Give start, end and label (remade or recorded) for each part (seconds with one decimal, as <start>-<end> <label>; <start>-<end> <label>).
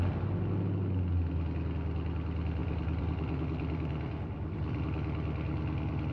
0.0-2.6 recorded; 2.6-4.8 remade; 4.8-6.1 recorded